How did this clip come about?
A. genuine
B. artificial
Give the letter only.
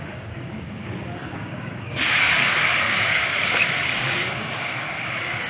B